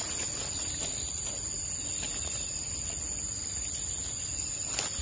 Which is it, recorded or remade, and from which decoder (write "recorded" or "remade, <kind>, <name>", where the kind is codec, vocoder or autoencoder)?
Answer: recorded